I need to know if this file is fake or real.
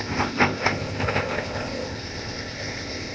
fake